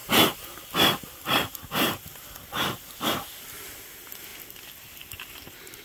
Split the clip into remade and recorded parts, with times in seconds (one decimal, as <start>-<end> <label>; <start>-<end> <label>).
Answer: 0.0-5.8 recorded